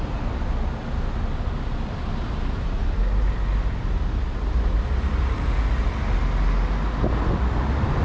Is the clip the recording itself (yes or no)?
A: yes